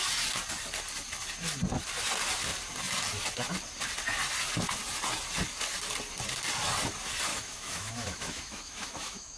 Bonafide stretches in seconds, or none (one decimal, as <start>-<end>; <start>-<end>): 0.0-7.3